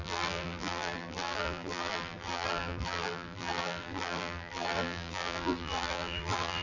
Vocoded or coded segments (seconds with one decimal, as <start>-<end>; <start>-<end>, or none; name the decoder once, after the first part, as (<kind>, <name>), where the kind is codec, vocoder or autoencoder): 0.0-6.6 (vocoder, BigVGAN v2)